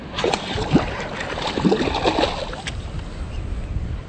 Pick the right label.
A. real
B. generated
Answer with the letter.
A